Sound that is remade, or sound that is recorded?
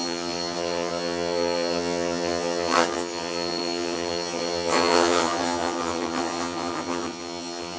remade